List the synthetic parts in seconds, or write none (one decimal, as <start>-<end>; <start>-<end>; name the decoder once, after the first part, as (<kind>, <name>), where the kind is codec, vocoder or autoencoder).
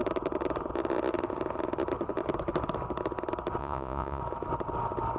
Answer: 3.6-4.2 (vocoder, Vocos)